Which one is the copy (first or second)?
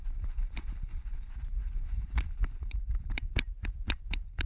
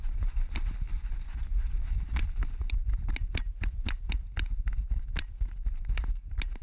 first